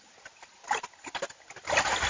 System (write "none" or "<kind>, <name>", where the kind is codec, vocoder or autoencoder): none